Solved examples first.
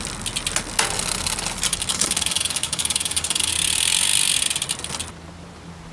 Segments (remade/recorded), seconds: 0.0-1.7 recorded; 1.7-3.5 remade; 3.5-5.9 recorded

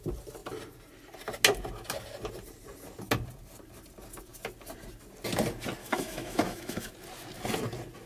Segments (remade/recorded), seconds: 0.0-5.8 recorded; 5.8-6.9 remade; 6.9-8.1 recorded

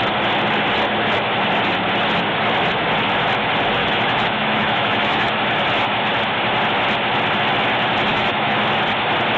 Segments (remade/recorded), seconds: 0.0-3.8 recorded; 3.8-5.3 remade; 5.3-8.1 recorded; 8.1-8.6 remade; 8.6-9.4 recorded

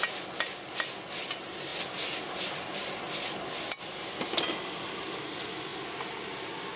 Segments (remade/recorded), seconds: 0.0-6.8 recorded

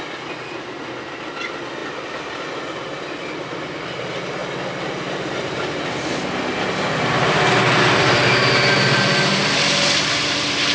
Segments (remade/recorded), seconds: 0.0-10.7 recorded

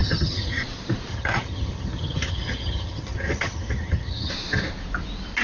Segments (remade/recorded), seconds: 0.0-0.6 remade; 0.6-1.1 recorded; 1.1-4.3 remade; 4.3-5.4 recorded